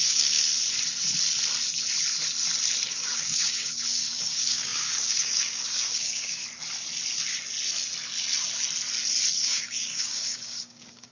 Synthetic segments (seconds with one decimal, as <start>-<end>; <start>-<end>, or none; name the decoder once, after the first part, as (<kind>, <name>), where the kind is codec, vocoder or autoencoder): 0.0-0.5 (codec, DAC); 2.9-6.4; 9.3-11.1